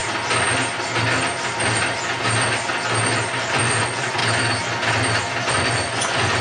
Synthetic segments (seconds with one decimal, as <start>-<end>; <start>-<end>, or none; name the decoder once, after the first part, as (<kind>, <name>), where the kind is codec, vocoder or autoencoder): 3.5-4.2 (vocoder, Vocos); 5.5-6.4